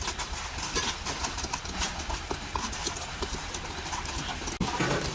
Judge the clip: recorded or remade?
recorded